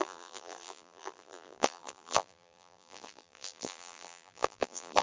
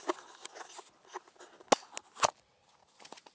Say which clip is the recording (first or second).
second